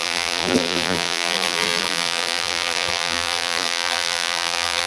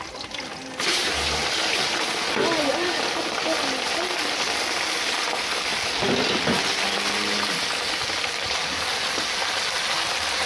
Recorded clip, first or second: second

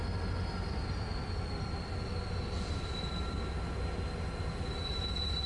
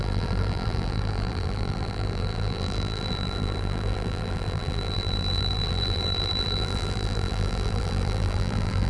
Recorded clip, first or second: first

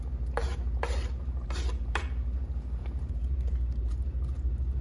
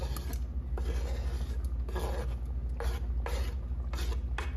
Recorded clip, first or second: second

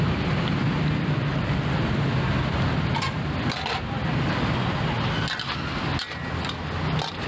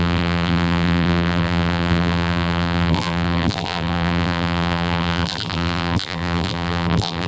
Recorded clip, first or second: first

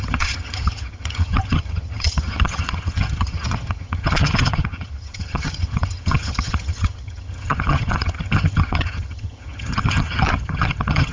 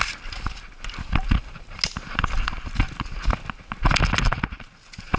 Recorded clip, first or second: second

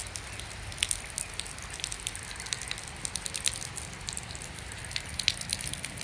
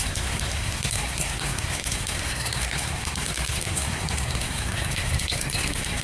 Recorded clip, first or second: first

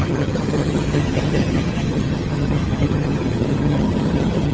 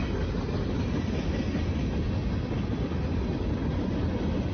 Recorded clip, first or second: second